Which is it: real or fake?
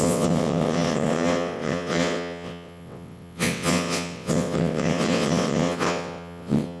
fake